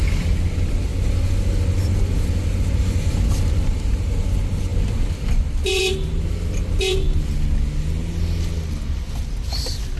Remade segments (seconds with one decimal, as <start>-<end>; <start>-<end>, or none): 4.7-5.8